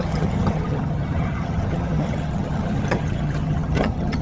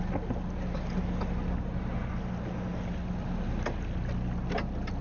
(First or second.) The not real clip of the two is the first